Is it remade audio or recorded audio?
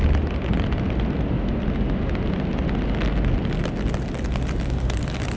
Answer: recorded